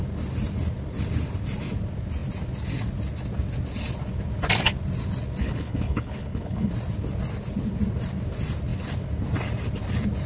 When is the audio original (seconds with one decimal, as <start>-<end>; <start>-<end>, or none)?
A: 0.0-5.4; 6.7-10.3